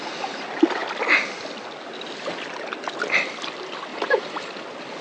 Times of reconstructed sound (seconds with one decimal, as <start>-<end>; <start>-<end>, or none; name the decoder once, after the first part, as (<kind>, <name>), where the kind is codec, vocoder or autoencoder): 3.9-4.5 (vocoder, BigVGAN v2)